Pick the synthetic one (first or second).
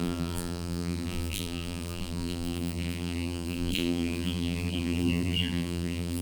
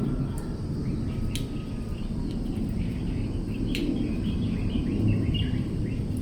first